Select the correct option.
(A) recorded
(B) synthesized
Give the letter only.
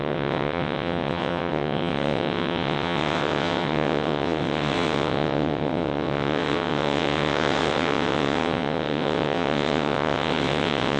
B